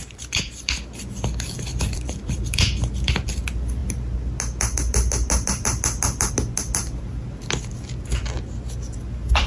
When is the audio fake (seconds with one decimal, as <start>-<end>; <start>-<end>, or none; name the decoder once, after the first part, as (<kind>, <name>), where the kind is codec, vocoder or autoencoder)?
0.0-0.7 (vocoder, BigVGAN v2); 1.7-3.1